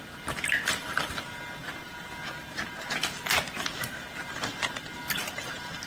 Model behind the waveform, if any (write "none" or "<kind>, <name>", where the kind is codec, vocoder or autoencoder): none